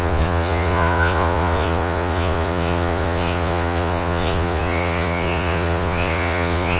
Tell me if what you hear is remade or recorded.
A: remade